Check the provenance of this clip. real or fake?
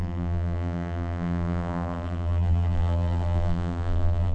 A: fake